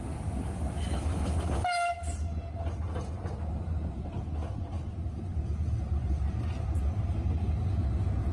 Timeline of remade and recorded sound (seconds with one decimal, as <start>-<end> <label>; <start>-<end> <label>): 0.0-6.0 recorded; 6.0-6.8 remade; 6.8-8.3 recorded